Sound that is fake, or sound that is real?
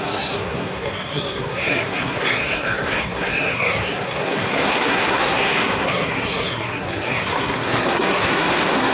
fake